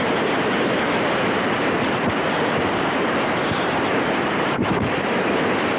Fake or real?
fake